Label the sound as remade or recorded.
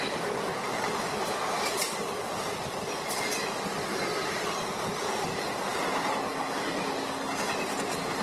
recorded